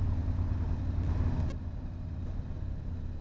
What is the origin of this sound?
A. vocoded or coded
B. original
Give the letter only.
B